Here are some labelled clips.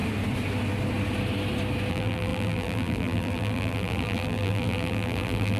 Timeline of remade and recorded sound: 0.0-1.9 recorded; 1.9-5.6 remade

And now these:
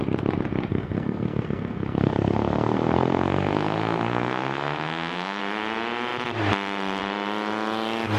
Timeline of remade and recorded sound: 0.0-0.7 recorded; 0.7-5.4 remade; 5.4-8.2 recorded

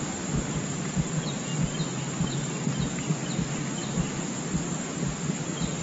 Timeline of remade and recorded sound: 0.0-5.8 recorded

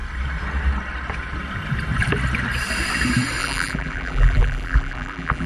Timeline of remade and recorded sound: 0.0-3.4 recorded; 3.4-5.5 remade

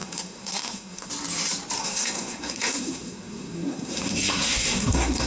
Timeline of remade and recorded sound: 0.0-1.1 remade; 1.1-1.8 recorded; 1.8-5.3 remade

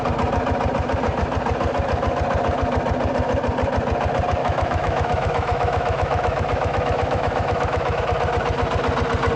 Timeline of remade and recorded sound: 0.0-4.4 recorded; 4.4-8.0 remade; 8.0-9.4 recorded

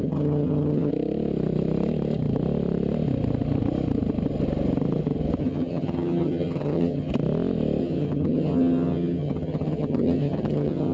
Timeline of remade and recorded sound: 0.0-0.9 remade; 0.9-5.4 recorded; 5.4-7.1 remade; 7.1-7.8 recorded; 7.8-10.9 remade

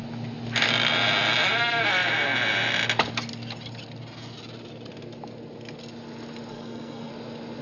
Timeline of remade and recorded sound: 0.0-6.5 recorded; 6.5-7.1 remade; 7.1-7.6 recorded